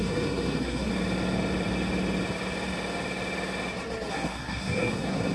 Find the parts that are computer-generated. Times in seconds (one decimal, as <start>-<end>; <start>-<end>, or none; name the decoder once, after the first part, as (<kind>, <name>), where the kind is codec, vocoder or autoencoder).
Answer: 0.0-0.9 (codec, SNAC); 4.1-5.3